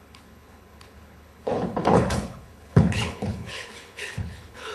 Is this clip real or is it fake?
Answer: fake